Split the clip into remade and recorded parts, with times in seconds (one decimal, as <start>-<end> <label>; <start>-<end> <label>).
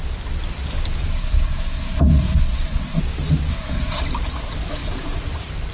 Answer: 0.0-1.1 recorded; 1.1-3.0 remade; 3.0-3.5 recorded; 3.5-4.0 remade; 4.0-5.7 recorded